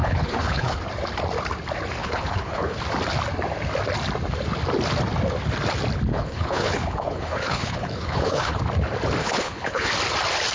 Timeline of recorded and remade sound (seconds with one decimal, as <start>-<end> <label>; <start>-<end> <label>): 0.0-0.8 remade; 0.8-2.0 recorded; 2.0-2.8 remade; 2.8-6.1 recorded; 6.1-8.6 remade; 8.6-9.2 recorded; 9.2-9.9 remade; 9.9-10.5 recorded